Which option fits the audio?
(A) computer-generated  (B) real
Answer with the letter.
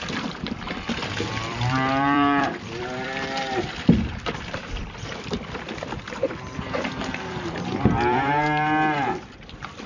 A